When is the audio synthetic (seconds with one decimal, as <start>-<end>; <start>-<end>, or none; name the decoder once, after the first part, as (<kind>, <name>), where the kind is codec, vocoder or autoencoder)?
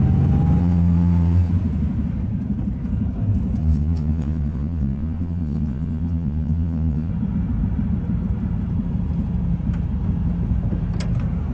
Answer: 0.6-1.5 (vocoder, Vocos); 3.6-7.1